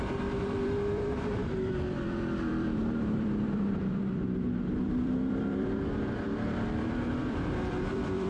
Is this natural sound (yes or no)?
no